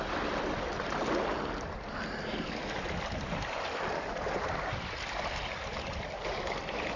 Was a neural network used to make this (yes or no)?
no